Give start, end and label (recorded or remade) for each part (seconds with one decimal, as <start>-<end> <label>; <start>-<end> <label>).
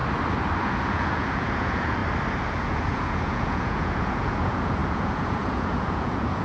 0.0-0.6 recorded; 0.6-2.0 remade; 2.0-2.5 recorded; 2.5-6.4 remade